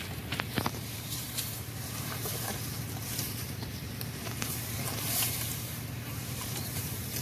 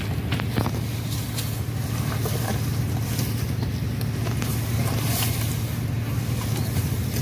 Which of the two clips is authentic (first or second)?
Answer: second